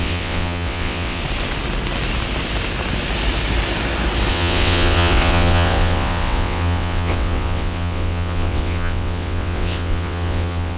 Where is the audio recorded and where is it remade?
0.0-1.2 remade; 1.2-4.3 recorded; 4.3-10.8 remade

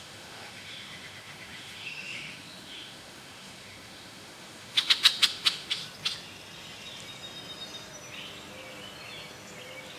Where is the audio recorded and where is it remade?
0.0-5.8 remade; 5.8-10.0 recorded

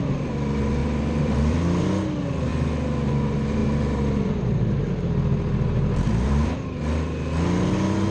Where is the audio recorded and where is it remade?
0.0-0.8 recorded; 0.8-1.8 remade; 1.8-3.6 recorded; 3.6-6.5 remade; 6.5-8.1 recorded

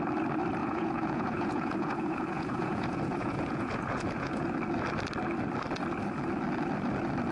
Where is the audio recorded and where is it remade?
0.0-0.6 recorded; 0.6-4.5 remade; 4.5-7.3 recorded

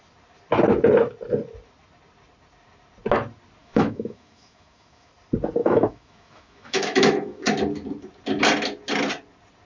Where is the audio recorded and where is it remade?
0.0-3.6 recorded; 3.6-5.1 remade; 5.1-5.6 recorded; 5.6-7.4 remade; 7.4-9.6 recorded

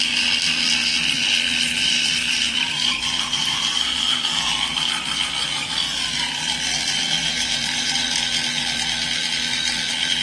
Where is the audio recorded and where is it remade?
0.0-1.8 recorded; 1.8-4.3 remade; 4.3-7.2 recorded; 7.2-7.9 remade; 7.9-10.2 recorded

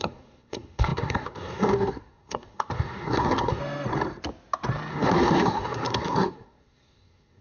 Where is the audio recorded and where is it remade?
0.0-3.6 remade; 3.6-4.9 recorded; 4.9-7.4 remade

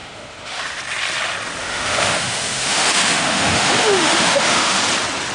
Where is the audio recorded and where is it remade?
0.0-0.8 remade; 0.8-1.6 recorded; 1.6-4.8 remade; 4.8-5.3 recorded